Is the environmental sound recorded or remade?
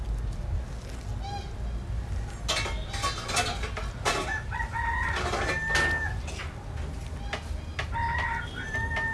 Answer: recorded